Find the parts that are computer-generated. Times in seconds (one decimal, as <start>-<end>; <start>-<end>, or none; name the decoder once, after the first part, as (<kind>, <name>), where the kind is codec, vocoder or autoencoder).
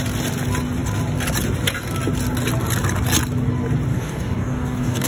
3.9-5.1 (codec, DAC)